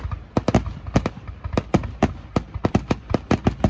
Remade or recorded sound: recorded